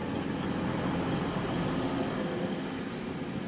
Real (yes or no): yes